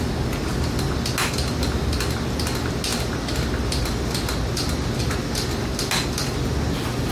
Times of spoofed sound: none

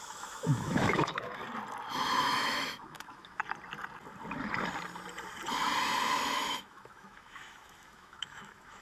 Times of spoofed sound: 0.0-1.4 (autoencoder, DAC-VAE); 1.9-3.4; 6.2-8.8

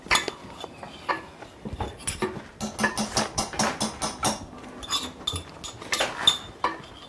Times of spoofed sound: none